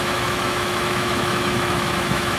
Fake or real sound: fake